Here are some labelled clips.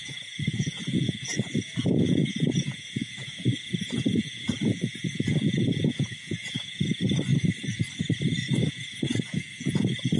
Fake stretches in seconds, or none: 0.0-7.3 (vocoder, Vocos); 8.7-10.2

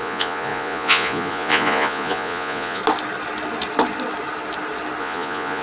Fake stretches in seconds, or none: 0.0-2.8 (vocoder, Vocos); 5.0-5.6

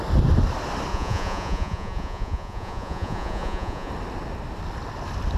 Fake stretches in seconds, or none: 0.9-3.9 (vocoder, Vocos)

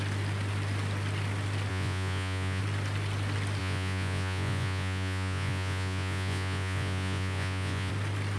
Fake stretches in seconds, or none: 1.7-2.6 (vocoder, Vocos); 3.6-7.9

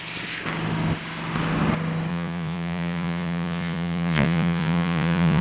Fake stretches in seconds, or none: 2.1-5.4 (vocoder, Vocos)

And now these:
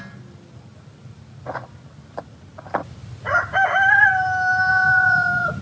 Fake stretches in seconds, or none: 4.7-5.6 (vocoder, Vocos)